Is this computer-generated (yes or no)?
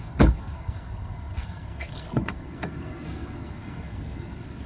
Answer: yes